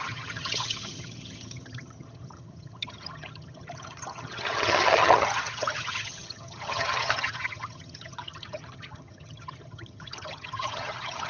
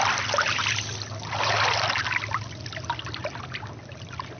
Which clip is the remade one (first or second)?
first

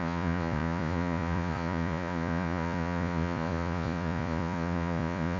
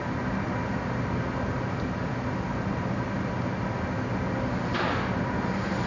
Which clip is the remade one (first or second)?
first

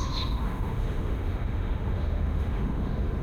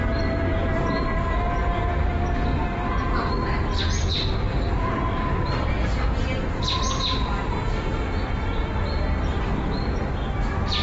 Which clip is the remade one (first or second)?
first